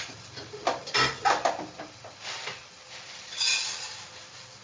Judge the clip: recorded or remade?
recorded